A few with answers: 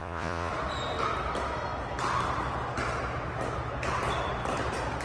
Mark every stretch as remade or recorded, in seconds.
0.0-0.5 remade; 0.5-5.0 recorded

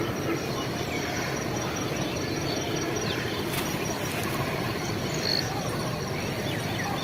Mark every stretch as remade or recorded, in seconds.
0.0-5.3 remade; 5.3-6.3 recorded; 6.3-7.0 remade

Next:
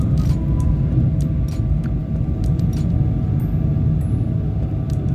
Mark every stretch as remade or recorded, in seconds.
0.0-5.1 recorded

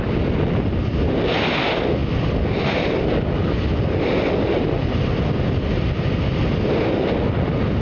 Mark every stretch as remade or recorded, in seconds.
0.0-7.8 recorded

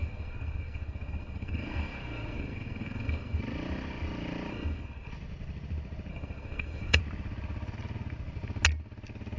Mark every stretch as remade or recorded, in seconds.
0.0-3.4 remade; 3.4-4.5 recorded; 4.5-5.1 remade; 5.1-6.1 recorded; 6.1-7.0 remade; 7.0-9.4 recorded

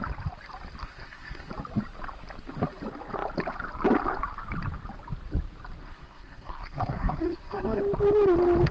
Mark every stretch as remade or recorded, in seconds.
0.0-0.8 recorded; 0.8-1.5 remade; 1.5-5.8 recorded; 5.8-7.8 remade; 7.8-8.7 recorded

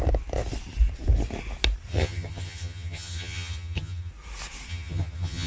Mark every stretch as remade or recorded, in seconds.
0.0-1.9 recorded; 1.9-4.1 remade; 4.1-4.7 recorded; 4.7-5.5 remade